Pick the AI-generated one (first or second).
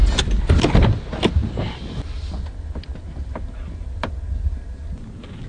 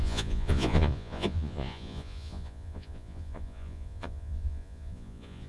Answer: second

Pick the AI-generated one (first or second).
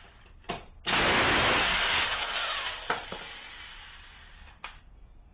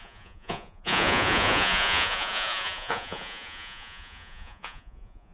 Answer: second